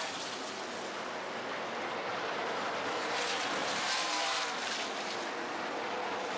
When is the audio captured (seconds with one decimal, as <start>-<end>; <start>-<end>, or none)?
0.0-2.1; 2.7-3.6; 4.4-6.4